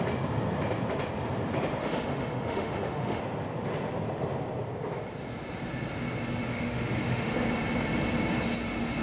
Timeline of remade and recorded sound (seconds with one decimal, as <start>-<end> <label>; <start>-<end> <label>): 0.0-1.8 recorded; 1.8-3.2 remade; 3.2-6.5 recorded; 6.5-7.3 remade; 7.3-9.0 recorded